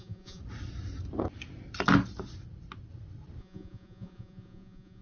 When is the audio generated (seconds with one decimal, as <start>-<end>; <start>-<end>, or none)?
0.0-0.4; 3.4-5.0